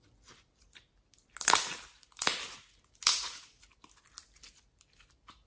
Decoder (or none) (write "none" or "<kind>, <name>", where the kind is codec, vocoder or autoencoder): none